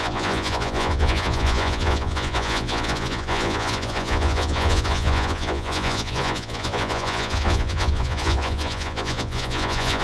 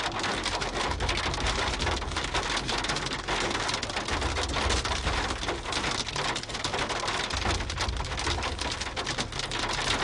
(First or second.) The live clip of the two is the second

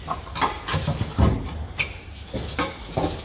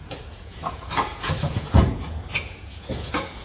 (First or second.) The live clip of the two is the first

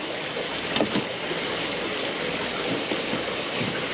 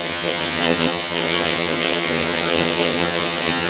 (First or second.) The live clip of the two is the first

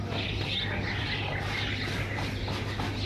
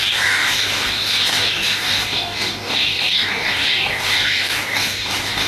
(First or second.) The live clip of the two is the first